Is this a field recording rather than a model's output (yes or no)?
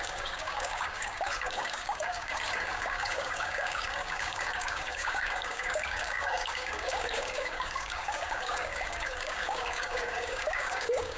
no